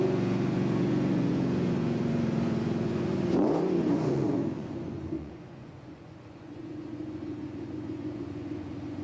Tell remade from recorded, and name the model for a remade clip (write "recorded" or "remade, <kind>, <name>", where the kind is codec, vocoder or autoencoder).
remade, vocoder, Vocos